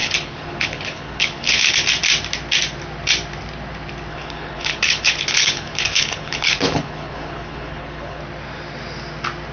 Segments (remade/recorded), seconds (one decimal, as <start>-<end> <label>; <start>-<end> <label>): 0.0-1.7 remade; 1.7-4.1 recorded; 4.1-8.2 remade; 8.2-9.5 recorded